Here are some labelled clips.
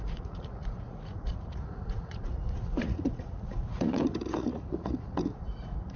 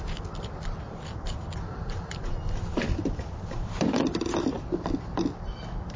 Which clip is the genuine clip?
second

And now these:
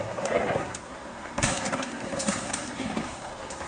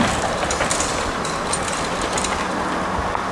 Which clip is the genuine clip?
second